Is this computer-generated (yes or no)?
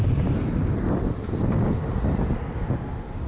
no